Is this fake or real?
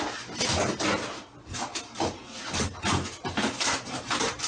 real